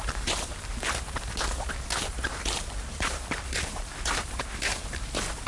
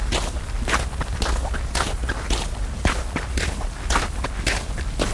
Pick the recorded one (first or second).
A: second